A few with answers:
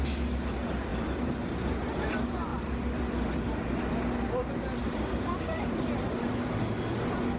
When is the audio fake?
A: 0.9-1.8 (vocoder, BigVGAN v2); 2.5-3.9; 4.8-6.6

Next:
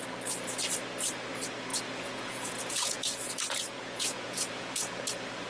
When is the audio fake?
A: 1.7-5.0 (vocoder, Vocos)

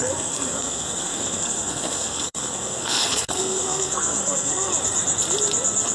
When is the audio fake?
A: 0.0-4.7 (codec, SNAC)

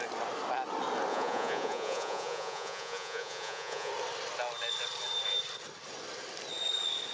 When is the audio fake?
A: 1.1-3.9 (vocoder, Vocos)

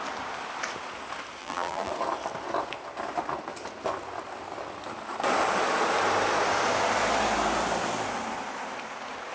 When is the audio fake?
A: 1.4-1.9 (vocoder, BigVGAN v2)

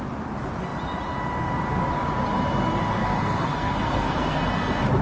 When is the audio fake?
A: 3.0-4.4 (codec, SNAC)

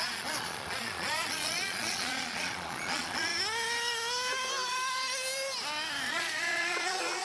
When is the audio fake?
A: 0.0-3.3 (vocoder, Vocos); 6.1-7.2